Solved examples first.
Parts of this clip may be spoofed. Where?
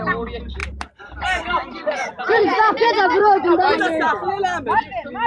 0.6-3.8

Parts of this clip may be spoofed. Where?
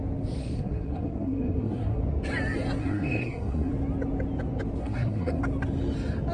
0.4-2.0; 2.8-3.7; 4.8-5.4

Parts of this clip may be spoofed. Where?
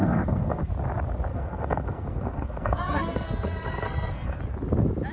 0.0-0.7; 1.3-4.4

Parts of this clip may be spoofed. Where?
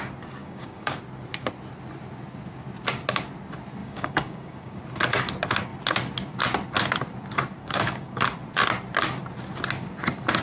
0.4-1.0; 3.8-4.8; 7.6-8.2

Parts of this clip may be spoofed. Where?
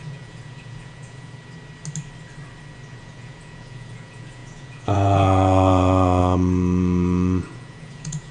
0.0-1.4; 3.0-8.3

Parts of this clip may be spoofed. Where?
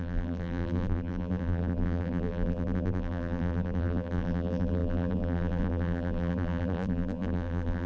0.0-7.9